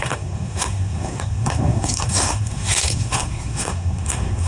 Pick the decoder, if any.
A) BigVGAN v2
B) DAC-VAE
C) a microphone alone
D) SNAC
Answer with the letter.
D